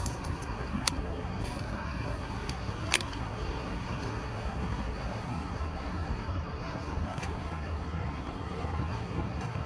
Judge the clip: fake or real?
fake